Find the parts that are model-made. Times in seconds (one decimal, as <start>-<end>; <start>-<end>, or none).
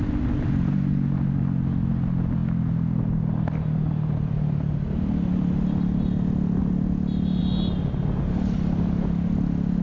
none